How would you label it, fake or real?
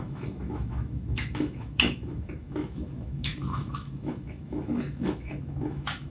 fake